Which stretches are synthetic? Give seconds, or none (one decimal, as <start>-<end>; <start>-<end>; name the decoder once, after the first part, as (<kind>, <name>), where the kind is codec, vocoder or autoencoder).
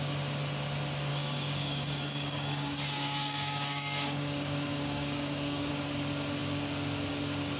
1.1-5.7 (codec, DAC)